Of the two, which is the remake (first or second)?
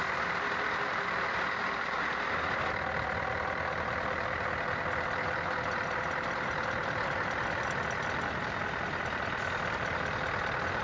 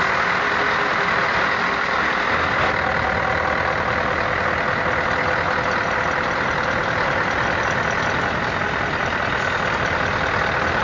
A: first